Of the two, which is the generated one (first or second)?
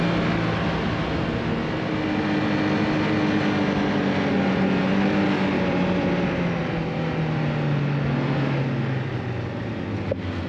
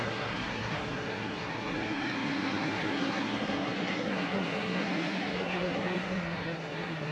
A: second